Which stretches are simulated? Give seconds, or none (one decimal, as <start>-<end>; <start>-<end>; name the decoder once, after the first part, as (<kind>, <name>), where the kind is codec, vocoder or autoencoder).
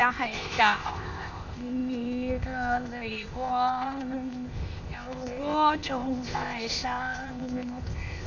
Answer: 0.0-8.3 (codec, ZipCodec)